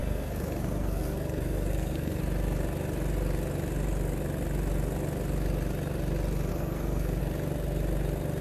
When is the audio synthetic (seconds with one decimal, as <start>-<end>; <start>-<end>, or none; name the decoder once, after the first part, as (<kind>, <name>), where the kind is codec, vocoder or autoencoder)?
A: 0.0-2.2 (codec, SNAC); 6.5-7.2